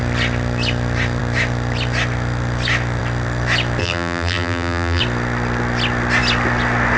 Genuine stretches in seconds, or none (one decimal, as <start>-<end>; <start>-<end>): 0.0-3.8; 5.0-7.0